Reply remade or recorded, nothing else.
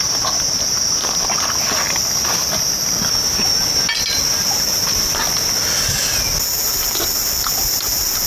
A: recorded